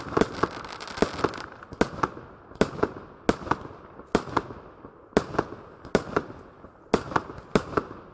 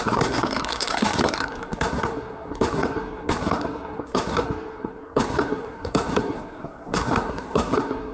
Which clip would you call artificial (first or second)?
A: second